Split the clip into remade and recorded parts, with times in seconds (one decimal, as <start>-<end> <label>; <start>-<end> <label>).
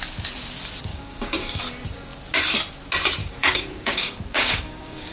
0.0-0.9 recorded; 0.9-1.6 remade; 1.6-3.2 recorded; 3.2-5.1 remade